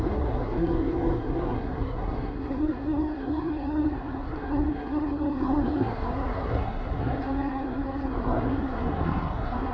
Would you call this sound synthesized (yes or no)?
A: yes